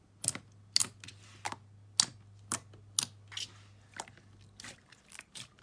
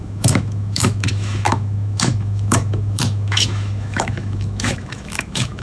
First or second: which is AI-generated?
second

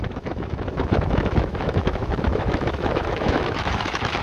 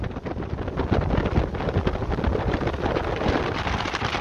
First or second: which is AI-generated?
first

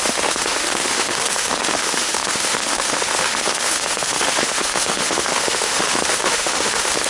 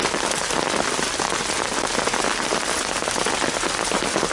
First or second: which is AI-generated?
first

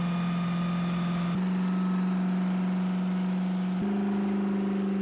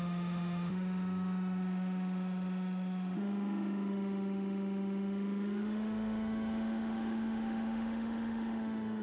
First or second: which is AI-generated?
second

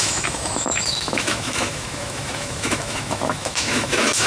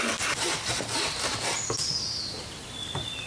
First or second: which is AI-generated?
first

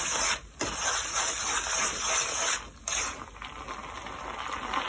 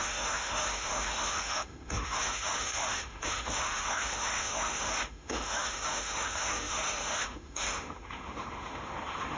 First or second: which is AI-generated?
second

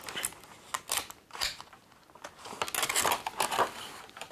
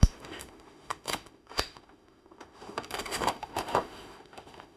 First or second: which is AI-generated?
second